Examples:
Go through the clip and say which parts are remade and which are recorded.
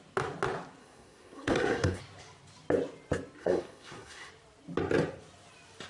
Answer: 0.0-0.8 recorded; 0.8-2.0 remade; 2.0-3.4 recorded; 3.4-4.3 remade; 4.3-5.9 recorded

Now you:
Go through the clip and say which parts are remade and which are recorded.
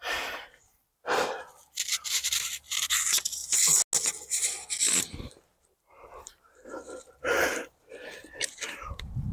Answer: 0.0-0.8 remade; 0.8-1.6 recorded; 1.6-3.4 remade; 3.4-5.1 recorded; 5.1-9.3 remade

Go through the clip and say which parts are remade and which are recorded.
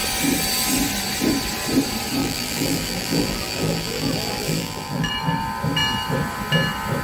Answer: 0.0-2.2 recorded; 2.2-5.1 remade; 5.1-7.0 recorded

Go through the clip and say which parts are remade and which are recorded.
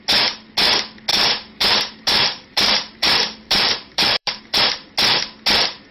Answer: 0.0-1.1 recorded; 1.1-4.6 remade; 4.6-5.9 recorded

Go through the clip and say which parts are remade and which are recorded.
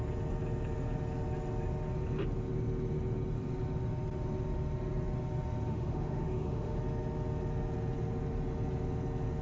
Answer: 0.0-5.7 recorded; 5.7-6.8 remade; 6.8-9.4 recorded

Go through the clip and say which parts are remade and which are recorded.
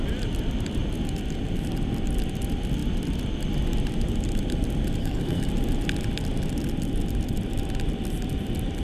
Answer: 0.0-5.0 recorded; 5.0-5.5 remade; 5.5-8.8 recorded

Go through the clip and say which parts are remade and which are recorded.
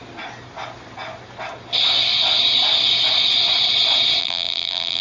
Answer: 0.0-4.2 recorded; 4.2-5.0 remade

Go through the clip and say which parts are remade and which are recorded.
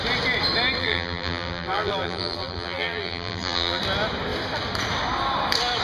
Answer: 0.0-0.8 recorded; 0.8-3.8 remade; 3.8-5.8 recorded